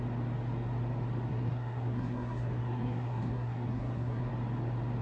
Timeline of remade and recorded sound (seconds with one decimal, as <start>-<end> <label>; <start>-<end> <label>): 0.0-1.3 recorded; 1.3-4.3 remade; 4.3-5.0 recorded